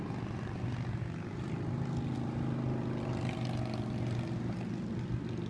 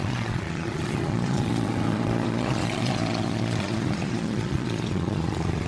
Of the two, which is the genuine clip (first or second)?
first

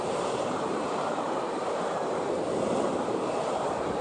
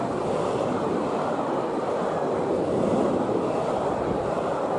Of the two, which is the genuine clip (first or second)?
second